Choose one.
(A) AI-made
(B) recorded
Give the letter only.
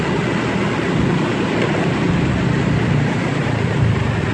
B